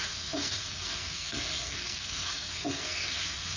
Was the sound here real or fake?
fake